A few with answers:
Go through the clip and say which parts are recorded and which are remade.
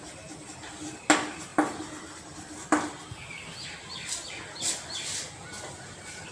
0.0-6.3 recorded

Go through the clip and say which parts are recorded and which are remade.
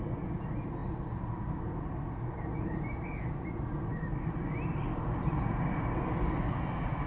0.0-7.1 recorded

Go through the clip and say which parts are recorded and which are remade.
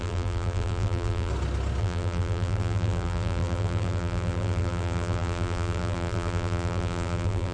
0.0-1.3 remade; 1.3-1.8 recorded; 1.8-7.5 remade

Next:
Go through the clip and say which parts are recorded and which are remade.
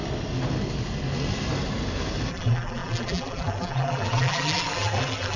0.0-2.3 recorded; 2.3-5.4 remade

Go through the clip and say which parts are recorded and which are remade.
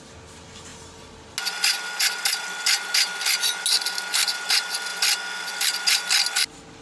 0.0-6.8 recorded